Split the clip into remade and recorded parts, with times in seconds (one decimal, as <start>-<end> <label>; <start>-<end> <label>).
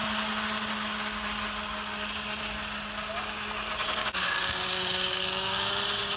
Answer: 0.0-4.0 recorded; 4.0-5.7 remade; 5.7-6.2 recorded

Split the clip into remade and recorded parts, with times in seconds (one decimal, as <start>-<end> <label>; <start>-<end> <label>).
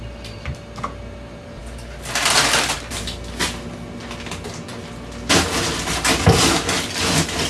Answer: 0.0-7.5 recorded